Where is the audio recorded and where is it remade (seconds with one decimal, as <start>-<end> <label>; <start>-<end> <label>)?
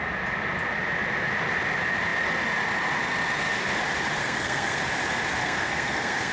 0.0-4.2 recorded; 4.2-4.8 remade; 4.8-5.4 recorded; 5.4-6.3 remade